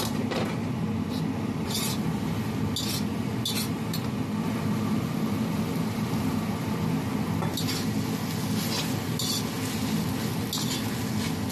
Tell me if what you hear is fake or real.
real